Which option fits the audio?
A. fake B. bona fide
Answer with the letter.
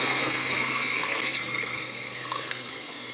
A